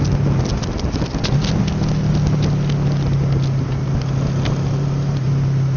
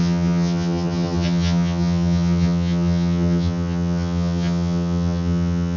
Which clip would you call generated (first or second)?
second